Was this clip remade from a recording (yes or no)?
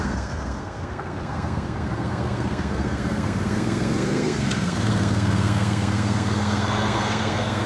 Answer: yes